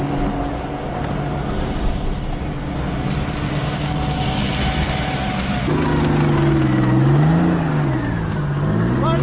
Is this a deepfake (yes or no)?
no